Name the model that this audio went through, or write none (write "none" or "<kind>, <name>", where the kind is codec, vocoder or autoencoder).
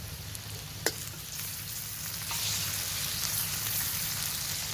none